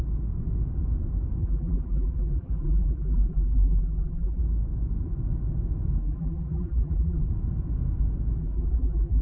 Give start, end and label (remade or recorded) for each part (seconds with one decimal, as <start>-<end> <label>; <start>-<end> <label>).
0.0-1.4 recorded; 1.4-4.4 remade; 4.4-6.0 recorded; 6.0-7.3 remade; 7.3-8.4 recorded; 8.4-9.2 remade